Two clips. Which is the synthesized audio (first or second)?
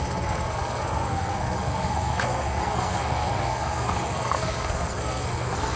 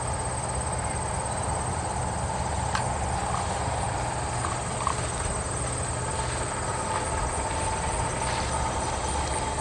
first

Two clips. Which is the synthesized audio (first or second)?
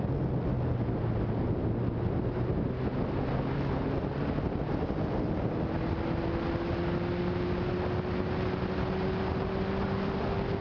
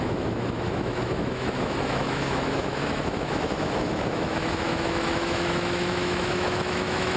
second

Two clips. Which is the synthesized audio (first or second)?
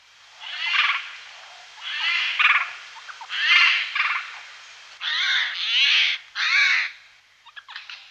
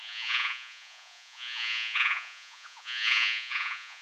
second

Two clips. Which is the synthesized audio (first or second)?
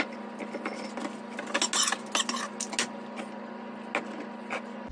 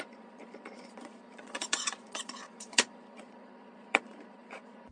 second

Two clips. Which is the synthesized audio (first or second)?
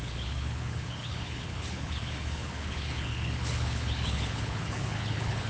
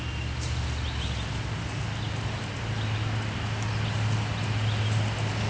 first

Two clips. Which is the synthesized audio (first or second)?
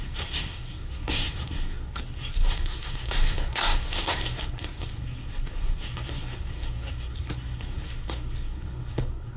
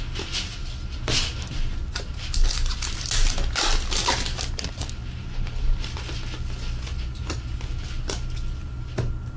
first